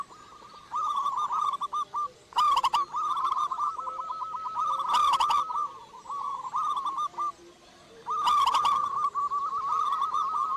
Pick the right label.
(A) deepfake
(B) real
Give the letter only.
B